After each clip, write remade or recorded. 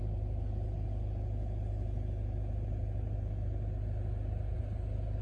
recorded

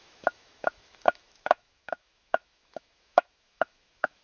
remade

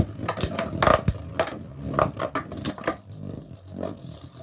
recorded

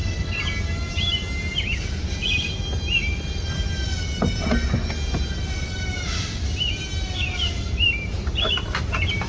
recorded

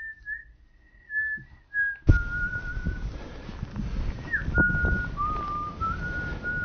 recorded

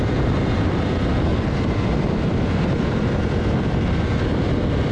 remade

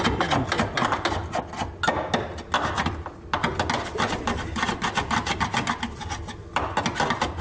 recorded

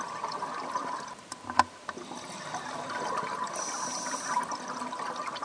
remade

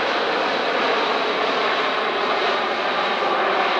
recorded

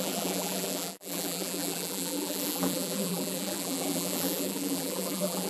remade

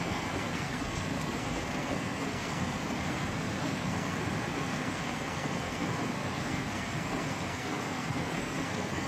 remade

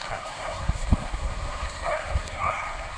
remade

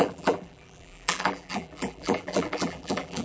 remade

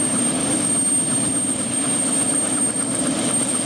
recorded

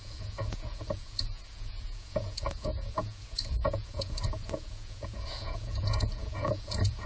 remade